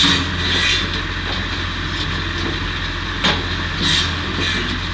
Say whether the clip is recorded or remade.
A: recorded